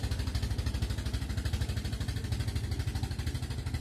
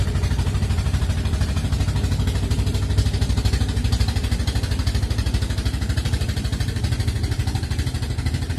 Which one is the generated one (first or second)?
second